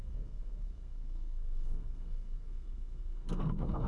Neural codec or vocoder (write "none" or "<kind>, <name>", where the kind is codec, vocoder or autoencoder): codec, SNAC